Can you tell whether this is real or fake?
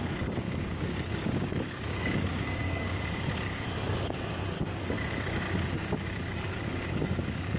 fake